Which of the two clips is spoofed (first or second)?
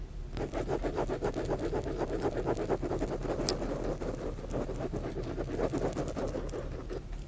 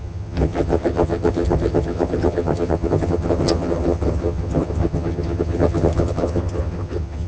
second